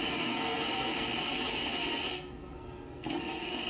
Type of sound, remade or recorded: remade